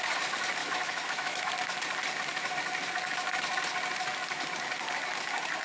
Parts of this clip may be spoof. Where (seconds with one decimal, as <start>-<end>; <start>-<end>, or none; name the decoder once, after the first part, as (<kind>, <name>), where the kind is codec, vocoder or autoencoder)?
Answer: 0.6-1.5 (autoencoder, DAC-VAE)